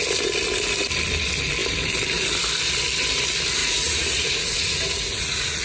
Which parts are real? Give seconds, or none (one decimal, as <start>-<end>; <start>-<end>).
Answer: 0.0-3.6